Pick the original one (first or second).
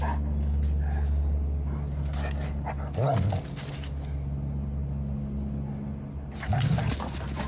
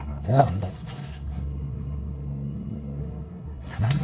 first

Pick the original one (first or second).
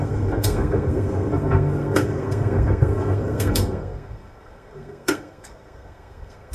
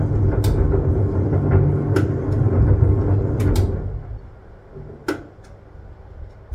second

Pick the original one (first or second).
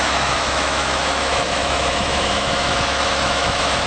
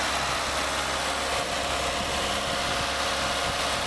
second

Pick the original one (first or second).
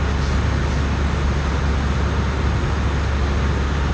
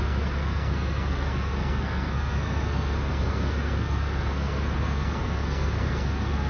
first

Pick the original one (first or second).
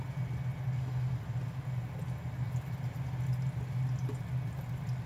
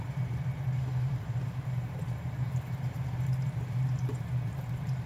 first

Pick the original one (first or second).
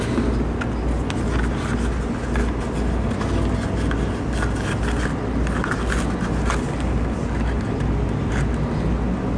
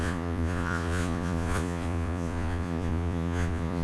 first